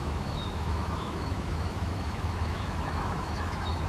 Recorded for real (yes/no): no